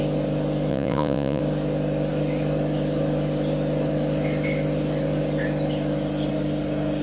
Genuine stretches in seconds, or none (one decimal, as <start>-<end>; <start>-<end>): 0.0-0.7; 1.4-7.0